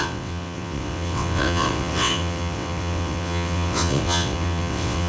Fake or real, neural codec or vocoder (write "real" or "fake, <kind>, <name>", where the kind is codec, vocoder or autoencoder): fake, vocoder, WaveNeXt